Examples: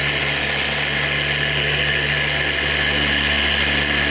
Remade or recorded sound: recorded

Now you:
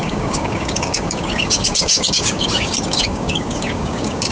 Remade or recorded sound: remade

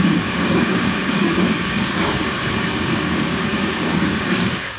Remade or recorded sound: remade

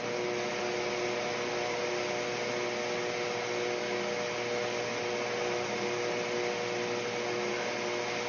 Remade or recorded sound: recorded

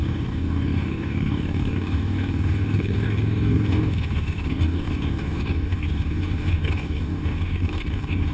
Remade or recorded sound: remade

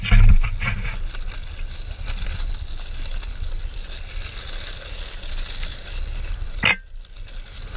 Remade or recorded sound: recorded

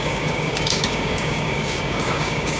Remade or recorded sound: remade